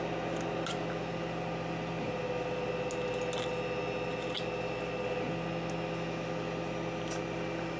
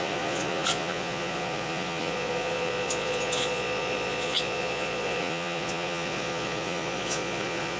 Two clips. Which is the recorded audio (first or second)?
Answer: first